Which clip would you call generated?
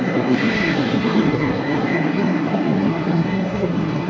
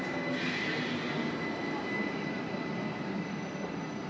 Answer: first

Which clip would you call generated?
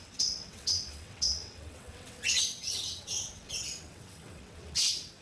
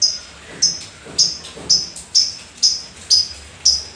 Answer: first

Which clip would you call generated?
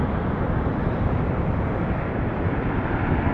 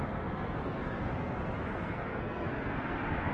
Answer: second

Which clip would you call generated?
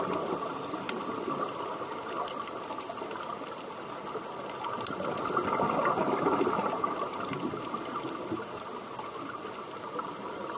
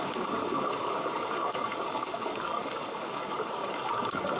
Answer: second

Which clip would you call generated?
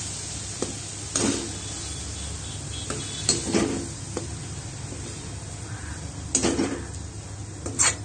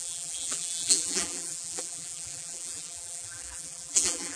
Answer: second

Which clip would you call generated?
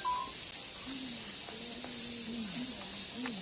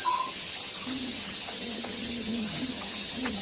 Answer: second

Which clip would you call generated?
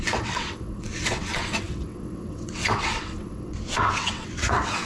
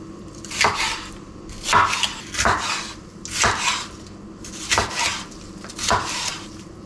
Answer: first